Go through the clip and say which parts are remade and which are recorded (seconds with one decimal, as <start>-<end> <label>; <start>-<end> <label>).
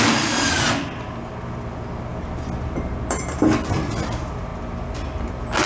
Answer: 0.0-5.7 recorded